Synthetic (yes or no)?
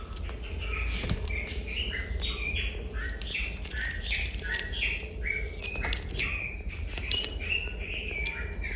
no